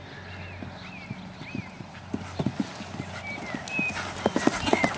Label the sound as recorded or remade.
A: recorded